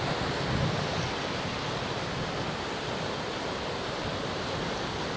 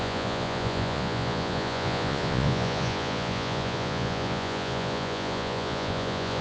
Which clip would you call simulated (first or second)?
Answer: second